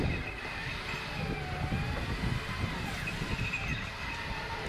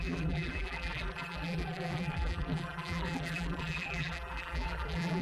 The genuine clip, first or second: first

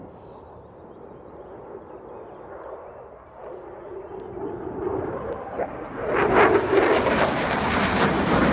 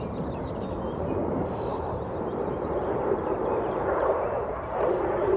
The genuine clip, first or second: first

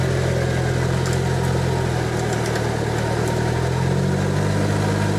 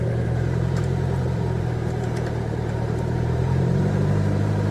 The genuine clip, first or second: first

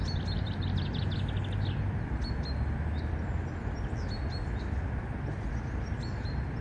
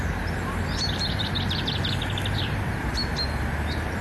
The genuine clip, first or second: first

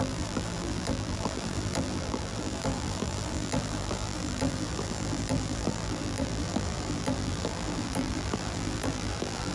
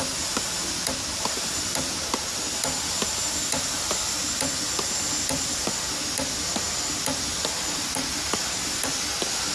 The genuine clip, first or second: second